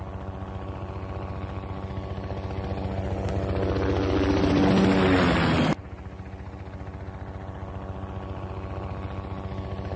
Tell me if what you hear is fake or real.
real